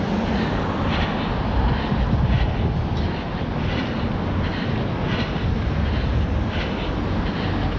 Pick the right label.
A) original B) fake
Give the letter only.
A